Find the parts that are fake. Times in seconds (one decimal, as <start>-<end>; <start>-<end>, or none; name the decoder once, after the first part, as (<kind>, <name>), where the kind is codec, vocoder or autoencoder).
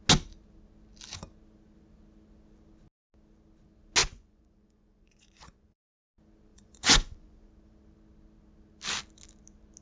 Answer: 4.0-6.0 (vocoder, Vocos); 6.5-7.5